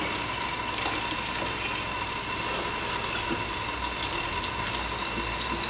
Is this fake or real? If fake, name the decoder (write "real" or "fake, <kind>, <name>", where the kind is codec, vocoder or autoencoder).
real